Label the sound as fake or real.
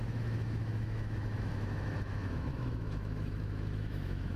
fake